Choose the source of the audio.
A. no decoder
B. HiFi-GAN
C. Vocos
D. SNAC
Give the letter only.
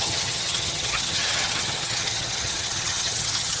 B